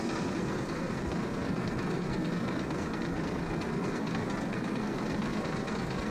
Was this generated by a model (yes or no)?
yes